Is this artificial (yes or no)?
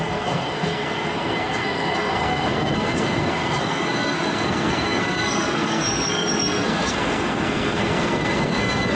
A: yes